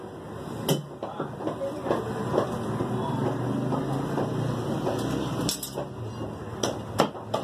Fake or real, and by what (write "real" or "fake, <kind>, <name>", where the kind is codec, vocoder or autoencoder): real